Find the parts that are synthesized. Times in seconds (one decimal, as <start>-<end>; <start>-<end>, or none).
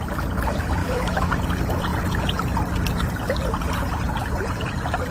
0.8-1.3